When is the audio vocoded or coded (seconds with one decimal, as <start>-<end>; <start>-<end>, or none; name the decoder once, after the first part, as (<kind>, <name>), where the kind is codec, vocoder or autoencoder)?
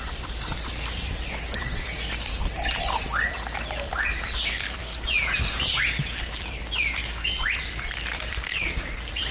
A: 0.0-4.8 (vocoder, BigVGAN v2); 6.4-7.0; 7.6-9.3